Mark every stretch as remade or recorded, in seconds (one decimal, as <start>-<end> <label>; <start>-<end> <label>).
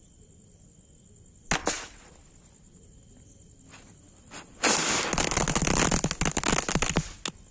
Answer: 0.0-7.5 recorded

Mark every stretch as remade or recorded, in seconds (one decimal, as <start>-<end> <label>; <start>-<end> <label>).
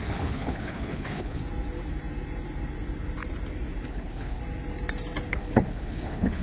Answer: 0.0-1.4 remade; 1.4-3.9 recorded; 3.9-4.4 remade; 4.4-5.3 recorded; 5.3-6.4 remade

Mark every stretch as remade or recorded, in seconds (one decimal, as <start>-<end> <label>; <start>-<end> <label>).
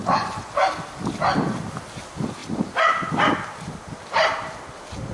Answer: 0.0-0.5 remade; 0.5-5.1 recorded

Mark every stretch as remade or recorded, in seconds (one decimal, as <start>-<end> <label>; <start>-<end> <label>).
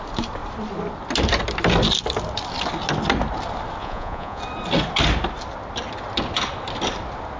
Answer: 0.0-3.8 recorded; 3.8-4.4 remade; 4.4-7.4 recorded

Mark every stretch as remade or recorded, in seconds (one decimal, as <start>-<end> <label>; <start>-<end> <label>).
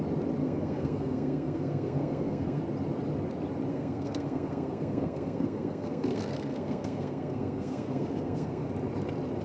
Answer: 0.0-0.4 recorded; 0.4-2.6 remade; 2.6-3.7 recorded; 3.7-8.7 remade; 8.7-9.4 recorded